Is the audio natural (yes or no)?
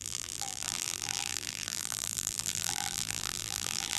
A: no